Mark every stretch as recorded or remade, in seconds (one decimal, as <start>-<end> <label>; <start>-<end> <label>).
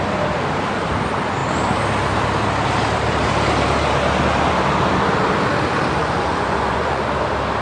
0.0-6.0 recorded; 6.0-7.0 remade; 7.0-7.6 recorded